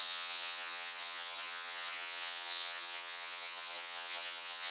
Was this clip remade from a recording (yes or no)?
yes